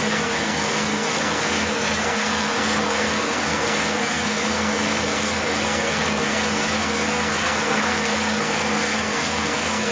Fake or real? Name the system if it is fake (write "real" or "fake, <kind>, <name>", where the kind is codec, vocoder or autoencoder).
fake, codec, SNAC